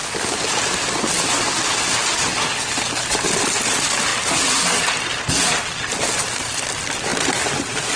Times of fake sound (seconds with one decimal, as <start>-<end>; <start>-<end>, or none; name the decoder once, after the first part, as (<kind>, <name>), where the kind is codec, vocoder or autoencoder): none